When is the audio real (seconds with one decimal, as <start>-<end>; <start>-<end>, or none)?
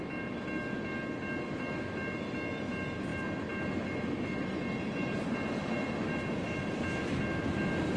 0.0-8.0